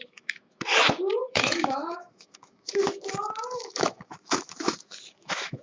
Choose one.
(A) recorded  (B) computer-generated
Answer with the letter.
B